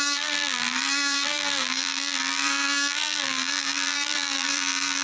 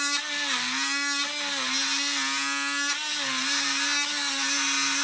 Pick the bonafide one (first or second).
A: second